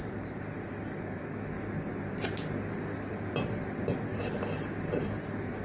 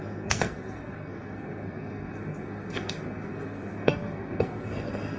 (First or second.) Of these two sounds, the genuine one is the first